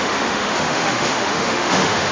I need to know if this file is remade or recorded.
remade